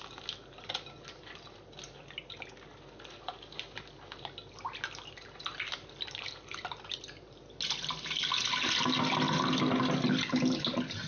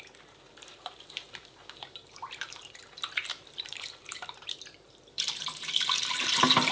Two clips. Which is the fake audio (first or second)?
second